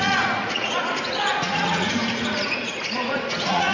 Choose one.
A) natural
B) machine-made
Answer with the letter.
B